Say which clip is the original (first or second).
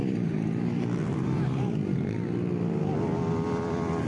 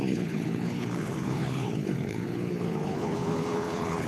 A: first